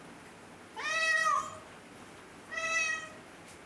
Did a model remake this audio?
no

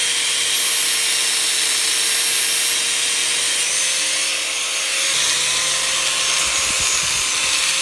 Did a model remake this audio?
no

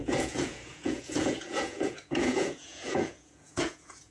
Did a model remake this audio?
yes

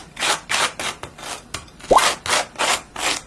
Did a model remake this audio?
no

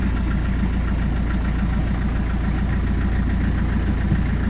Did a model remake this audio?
no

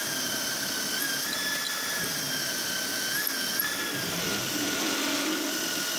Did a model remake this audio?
no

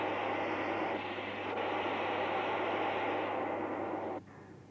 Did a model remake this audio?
no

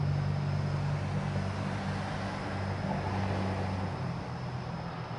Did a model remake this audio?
no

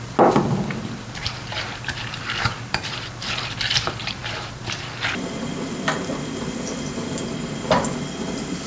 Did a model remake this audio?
yes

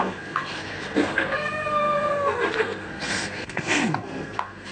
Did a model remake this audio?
yes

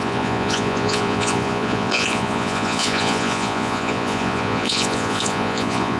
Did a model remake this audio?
yes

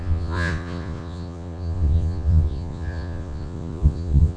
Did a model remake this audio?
yes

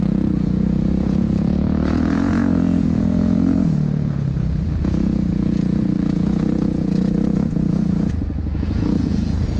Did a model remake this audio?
yes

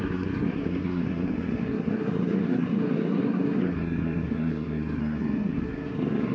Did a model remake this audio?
yes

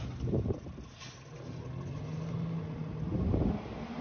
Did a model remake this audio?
no